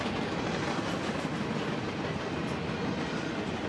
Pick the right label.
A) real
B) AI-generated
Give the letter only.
A